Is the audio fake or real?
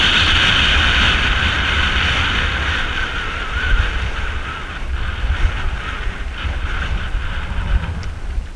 real